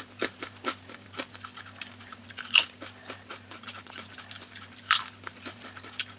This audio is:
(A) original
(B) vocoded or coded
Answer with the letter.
A